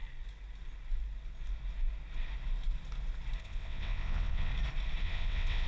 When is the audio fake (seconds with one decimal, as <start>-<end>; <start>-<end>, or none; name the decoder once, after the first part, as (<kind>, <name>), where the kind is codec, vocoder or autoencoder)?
3.4-4.5 (vocoder, WaveNeXt); 5.0-5.7